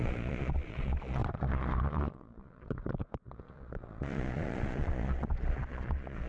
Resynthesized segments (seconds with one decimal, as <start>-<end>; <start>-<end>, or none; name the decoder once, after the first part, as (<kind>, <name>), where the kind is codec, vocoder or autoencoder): 0.0-6.3 (vocoder, Vocos)